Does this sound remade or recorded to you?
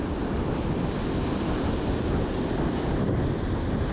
recorded